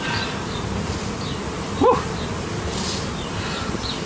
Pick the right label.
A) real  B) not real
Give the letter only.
A